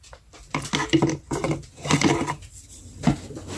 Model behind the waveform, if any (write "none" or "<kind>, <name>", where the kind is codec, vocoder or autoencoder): none